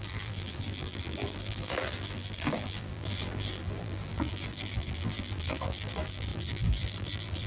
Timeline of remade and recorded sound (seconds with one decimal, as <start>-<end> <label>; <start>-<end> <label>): 0.0-7.5 remade